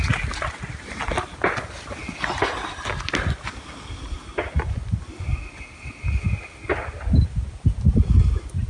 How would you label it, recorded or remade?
recorded